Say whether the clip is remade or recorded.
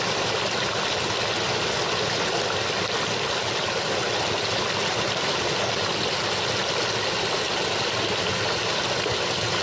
recorded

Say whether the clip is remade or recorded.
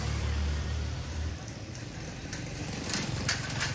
remade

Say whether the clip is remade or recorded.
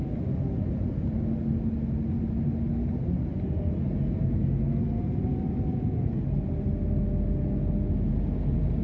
recorded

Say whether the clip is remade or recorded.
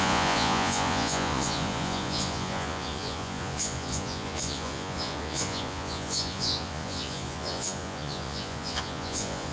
remade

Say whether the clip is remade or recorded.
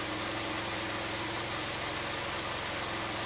recorded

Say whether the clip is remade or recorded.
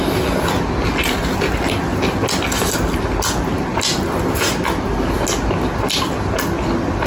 recorded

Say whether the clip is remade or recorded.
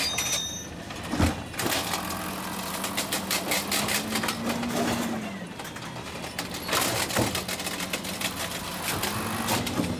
recorded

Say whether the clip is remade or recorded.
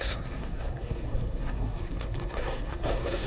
remade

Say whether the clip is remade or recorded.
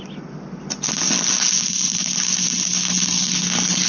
recorded